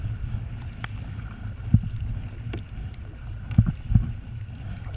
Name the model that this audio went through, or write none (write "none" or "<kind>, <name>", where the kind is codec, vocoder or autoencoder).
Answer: none